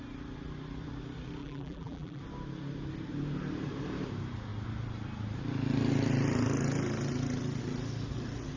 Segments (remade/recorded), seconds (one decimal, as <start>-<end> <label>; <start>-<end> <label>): 0.0-1.4 recorded; 1.4-2.2 remade; 2.2-8.6 recorded